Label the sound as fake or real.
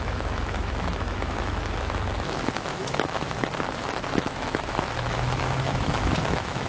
fake